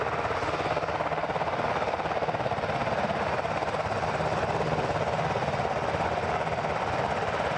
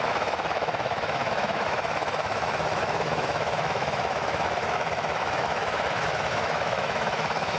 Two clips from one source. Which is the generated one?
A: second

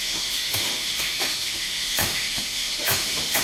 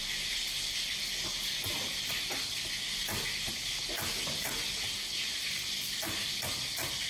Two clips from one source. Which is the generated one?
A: first